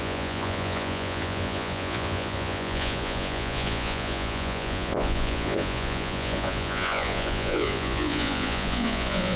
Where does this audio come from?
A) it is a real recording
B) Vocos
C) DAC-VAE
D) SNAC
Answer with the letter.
B